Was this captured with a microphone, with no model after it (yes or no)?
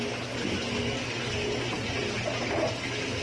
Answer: yes